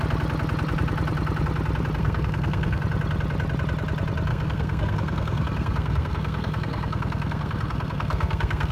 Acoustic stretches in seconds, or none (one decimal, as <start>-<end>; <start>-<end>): 0.0-2.0; 2.8-4.3